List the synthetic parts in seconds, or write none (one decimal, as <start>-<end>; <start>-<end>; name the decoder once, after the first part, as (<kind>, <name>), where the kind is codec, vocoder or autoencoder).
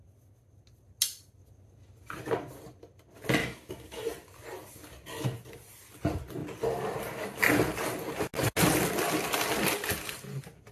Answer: 3.4-4.0 (autoencoder, DAC-VAE)